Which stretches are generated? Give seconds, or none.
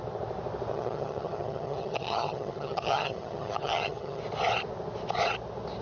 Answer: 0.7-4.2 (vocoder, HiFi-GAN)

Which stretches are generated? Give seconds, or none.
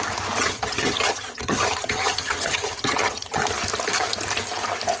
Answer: 0.4-3.4 (vocoder, HiFi-GAN)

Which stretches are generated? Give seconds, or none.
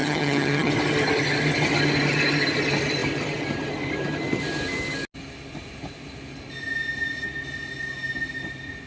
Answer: 0.0-0.7 (vocoder, HiFi-GAN)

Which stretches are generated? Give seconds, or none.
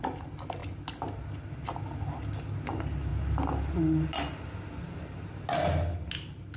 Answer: none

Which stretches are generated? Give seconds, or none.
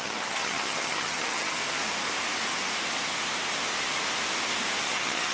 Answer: 0.0-1.6 (vocoder, HiFi-GAN); 4.8-5.3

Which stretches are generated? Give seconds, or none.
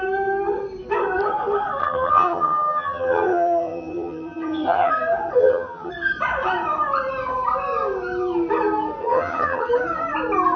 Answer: 1.8-4.9 (vocoder, HiFi-GAN); 5.4-5.9; 9.0-9.7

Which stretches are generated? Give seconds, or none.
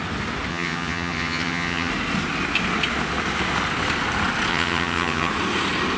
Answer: 0.5-1.9 (vocoder, HiFi-GAN); 4.5-5.3